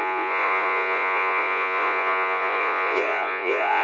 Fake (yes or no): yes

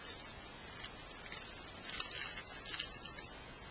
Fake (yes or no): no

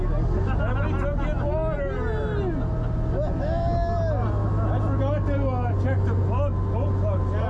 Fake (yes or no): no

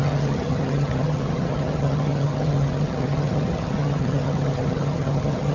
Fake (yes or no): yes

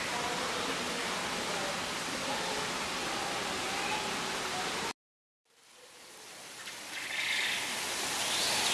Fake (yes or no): no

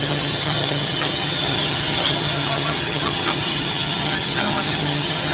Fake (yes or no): yes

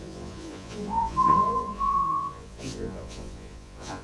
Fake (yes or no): yes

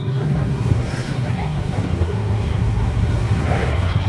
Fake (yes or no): yes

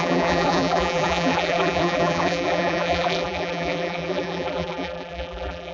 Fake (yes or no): yes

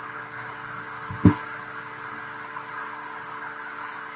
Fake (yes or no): no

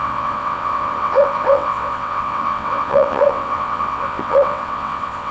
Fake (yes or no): yes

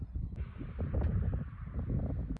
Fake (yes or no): no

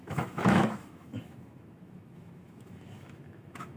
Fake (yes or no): yes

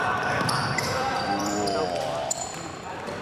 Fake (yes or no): yes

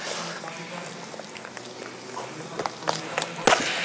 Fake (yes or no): no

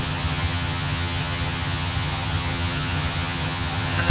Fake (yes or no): yes